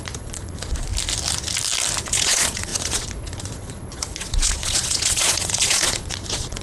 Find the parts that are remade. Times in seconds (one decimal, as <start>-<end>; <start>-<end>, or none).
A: 0.0-0.9; 2.0-6.6